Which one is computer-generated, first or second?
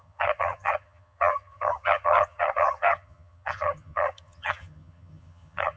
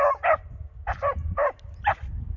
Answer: first